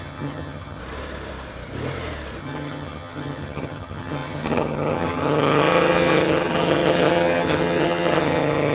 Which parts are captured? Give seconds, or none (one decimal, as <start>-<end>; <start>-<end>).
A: 0.8-2.4